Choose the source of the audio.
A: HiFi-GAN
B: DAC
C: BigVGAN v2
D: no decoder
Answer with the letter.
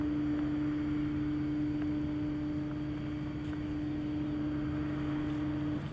D